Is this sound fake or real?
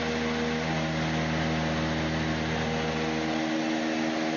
real